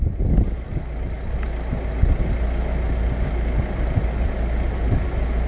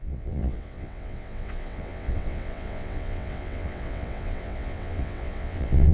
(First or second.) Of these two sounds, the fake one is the second